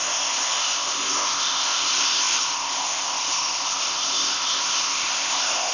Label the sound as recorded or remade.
remade